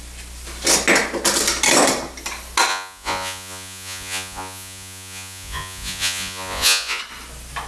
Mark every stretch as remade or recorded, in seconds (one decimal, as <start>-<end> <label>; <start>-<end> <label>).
0.0-2.7 recorded; 2.7-7.0 remade; 7.0-7.7 recorded